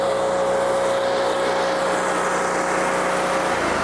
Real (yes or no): yes